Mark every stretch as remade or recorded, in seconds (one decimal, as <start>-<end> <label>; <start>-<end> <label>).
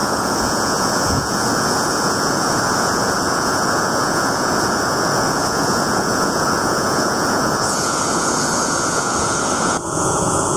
0.0-10.6 remade